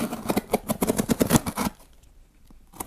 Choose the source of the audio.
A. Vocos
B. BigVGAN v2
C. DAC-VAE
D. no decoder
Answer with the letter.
B